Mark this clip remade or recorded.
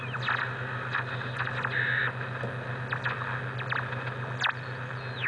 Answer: recorded